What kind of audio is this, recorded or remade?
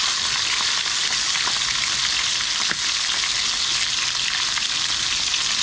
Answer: recorded